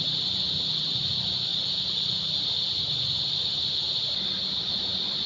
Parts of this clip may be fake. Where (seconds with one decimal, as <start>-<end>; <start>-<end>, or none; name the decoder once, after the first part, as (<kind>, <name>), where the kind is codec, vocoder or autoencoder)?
none